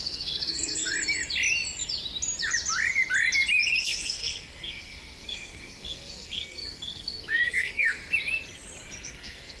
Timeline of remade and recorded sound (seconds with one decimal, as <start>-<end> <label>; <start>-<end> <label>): 0.0-0.9 remade; 0.9-3.8 recorded; 3.8-8.0 remade; 8.0-9.0 recorded; 9.0-9.6 remade